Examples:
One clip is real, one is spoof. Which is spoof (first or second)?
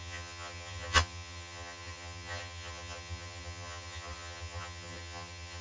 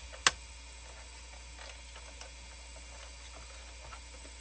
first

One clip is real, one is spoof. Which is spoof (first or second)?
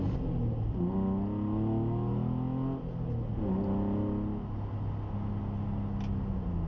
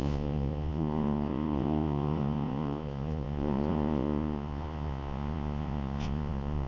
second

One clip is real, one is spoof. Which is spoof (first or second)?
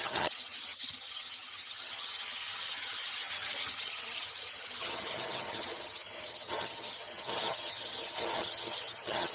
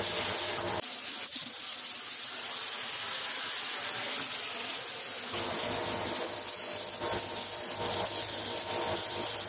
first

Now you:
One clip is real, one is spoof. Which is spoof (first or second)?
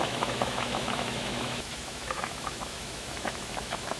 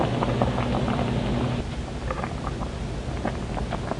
first